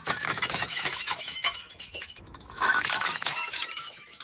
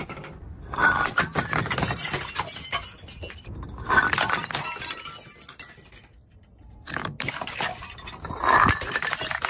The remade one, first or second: first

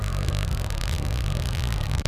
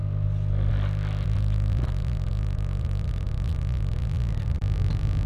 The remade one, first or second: first